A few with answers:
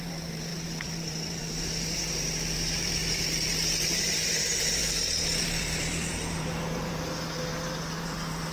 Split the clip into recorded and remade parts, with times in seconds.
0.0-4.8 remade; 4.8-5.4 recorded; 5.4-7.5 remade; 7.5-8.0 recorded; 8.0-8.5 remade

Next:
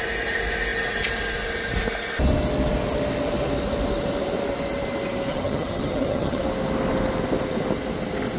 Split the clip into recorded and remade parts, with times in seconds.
0.0-5.3 recorded; 5.3-6.4 remade; 6.4-8.4 recorded